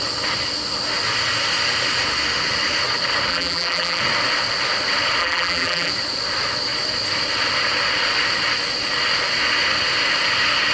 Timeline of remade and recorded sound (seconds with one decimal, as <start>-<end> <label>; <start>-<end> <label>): 0.0-3.3 recorded; 3.3-4.0 remade; 4.0-5.2 recorded; 5.2-5.9 remade; 5.9-10.7 recorded